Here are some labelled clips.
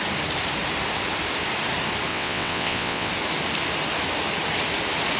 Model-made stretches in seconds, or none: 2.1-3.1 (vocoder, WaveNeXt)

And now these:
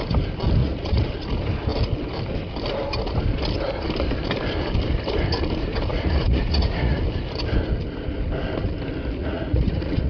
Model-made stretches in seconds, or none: 0.6-1.1 (vocoder, Vocos); 5.9-7.0; 9.2-10.1